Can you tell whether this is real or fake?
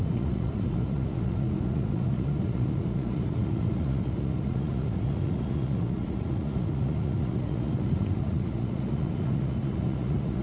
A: fake